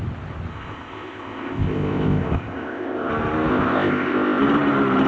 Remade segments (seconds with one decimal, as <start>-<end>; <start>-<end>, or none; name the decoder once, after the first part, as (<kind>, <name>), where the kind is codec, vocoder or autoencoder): 0.5-3.1 (codec, ZipCodec); 3.5-4.4